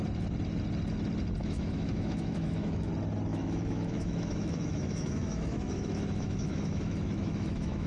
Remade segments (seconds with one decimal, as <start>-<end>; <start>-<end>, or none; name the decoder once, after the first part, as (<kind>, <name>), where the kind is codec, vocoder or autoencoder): 1.4-2.9 (autoencoder, DAC-VAE); 3.3-7.9